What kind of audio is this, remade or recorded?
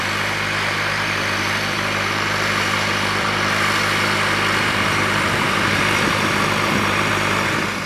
remade